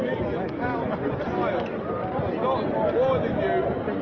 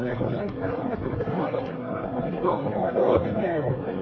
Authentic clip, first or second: first